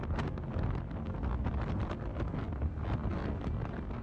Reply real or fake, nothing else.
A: real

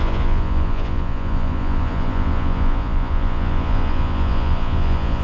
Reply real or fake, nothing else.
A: fake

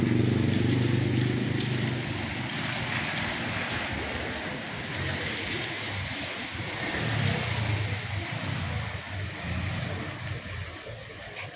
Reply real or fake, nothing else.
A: real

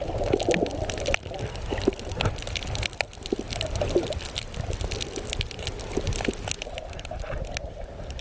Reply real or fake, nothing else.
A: real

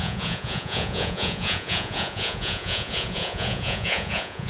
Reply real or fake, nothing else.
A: fake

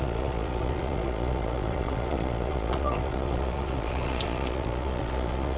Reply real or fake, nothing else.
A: fake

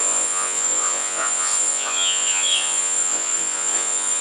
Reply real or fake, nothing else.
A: fake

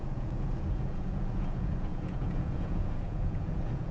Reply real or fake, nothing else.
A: fake